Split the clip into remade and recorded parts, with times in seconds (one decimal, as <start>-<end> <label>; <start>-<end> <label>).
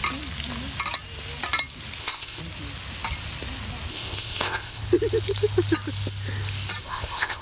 0.0-2.0 recorded; 2.0-2.4 remade; 2.4-3.9 recorded; 3.9-4.8 remade; 4.8-6.8 recorded; 6.8-7.4 remade